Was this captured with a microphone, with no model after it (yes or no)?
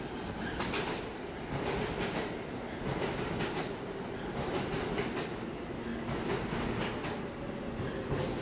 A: yes